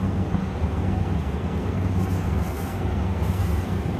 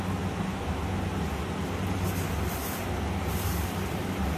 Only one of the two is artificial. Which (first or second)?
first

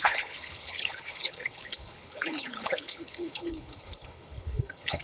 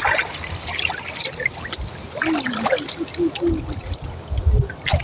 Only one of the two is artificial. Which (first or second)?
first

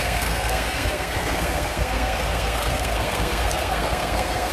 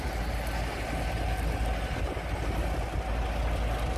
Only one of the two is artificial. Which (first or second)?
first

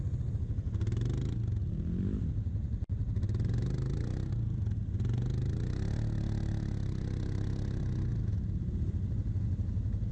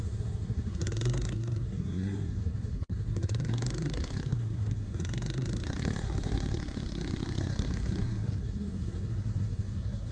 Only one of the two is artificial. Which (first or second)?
second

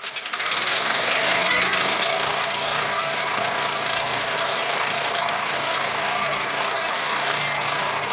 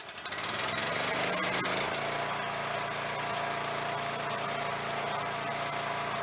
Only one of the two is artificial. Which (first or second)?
first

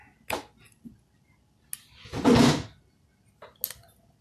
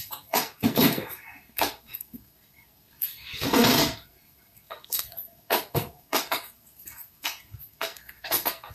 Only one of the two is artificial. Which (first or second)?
second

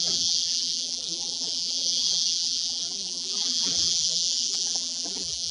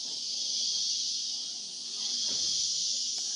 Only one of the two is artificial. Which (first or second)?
first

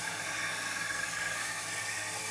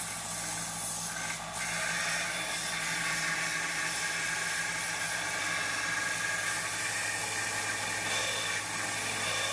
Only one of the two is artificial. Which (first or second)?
first